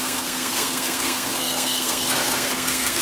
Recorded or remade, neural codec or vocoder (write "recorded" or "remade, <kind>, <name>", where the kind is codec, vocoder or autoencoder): remade, codec, SNAC